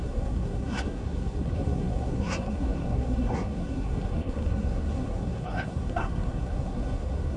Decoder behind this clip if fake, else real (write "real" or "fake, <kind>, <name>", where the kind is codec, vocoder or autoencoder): fake, codec, SNAC